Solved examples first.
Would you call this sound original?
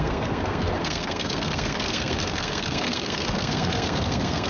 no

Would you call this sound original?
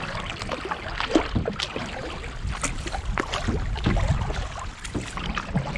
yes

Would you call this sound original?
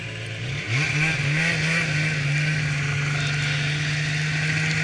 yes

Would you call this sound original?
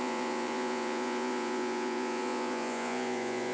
no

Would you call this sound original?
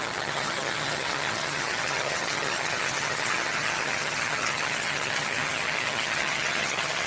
no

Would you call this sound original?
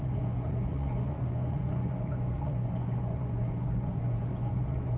no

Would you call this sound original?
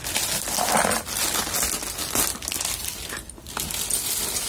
yes